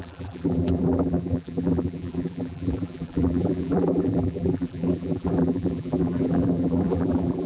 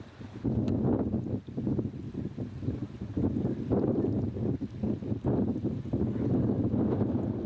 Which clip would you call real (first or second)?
second